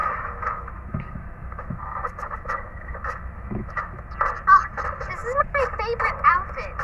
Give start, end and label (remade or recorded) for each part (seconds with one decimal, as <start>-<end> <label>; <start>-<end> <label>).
0.0-4.0 remade; 4.0-6.8 recorded